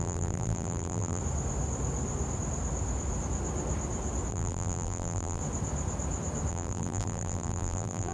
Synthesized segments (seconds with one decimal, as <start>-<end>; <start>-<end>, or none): 0.0-1.2; 4.3-5.4; 6.5-8.1